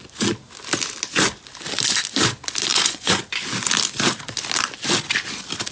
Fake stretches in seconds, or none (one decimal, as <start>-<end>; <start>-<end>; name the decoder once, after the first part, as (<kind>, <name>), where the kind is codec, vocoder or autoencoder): 2.7-3.2 (vocoder, Vocos)